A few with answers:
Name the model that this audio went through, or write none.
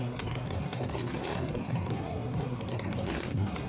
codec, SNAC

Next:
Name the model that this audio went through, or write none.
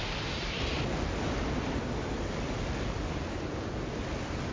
none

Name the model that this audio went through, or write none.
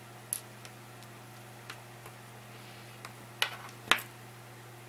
none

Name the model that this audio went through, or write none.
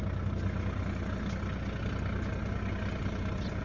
none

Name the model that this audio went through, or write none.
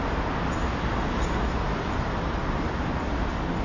none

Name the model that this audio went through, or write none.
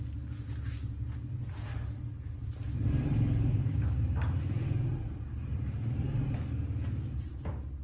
none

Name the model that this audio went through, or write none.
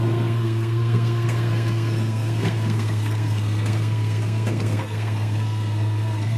codec, SNAC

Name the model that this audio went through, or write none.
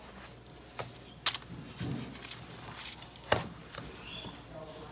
none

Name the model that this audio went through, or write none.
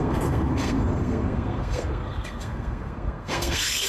codec, SNAC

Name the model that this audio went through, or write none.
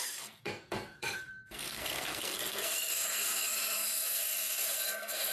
codec, SNAC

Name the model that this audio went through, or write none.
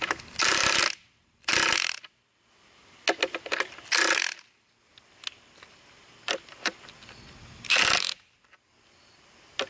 none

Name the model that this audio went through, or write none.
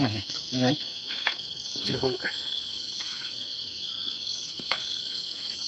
codec, SNAC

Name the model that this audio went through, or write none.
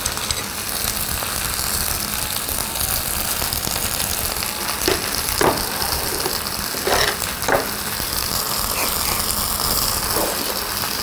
none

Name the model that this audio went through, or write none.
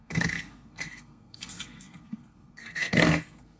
codec, SNAC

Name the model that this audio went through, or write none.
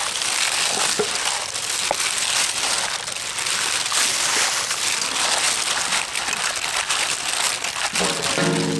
none